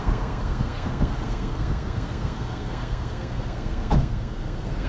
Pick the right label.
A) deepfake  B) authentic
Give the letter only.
A